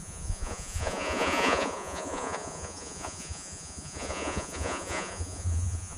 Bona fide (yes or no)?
no